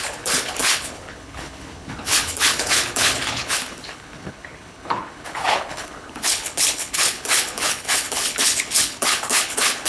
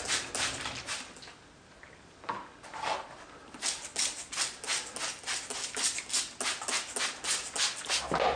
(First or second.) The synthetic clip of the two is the first